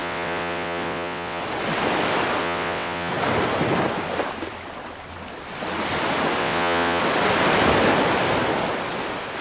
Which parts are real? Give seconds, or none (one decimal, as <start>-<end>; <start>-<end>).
1.4-2.4; 3.1-6.4; 7.0-9.4